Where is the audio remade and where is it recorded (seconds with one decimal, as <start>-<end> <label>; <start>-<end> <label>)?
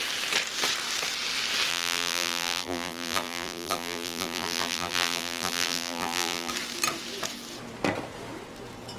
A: 0.0-1.7 recorded; 1.7-6.5 remade; 6.5-9.0 recorded